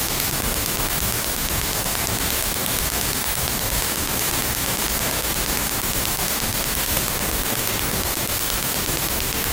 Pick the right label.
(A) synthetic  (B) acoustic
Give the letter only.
A